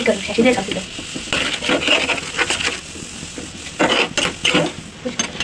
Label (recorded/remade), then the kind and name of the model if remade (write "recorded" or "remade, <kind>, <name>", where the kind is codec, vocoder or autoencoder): recorded